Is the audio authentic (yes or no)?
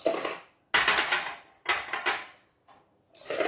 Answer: yes